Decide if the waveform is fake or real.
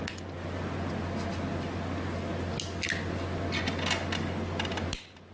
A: real